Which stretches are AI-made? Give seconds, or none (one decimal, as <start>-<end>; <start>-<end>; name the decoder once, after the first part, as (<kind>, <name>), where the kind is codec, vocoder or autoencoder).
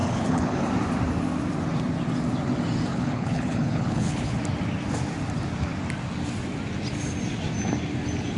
0.0-0.7 (codec, HILCodec); 2.9-4.4